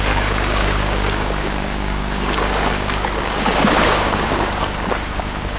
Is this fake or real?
fake